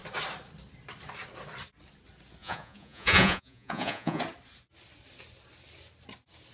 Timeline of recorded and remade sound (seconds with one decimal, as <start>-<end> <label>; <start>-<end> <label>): 0.0-2.4 recorded; 2.4-4.2 remade; 4.2-6.5 recorded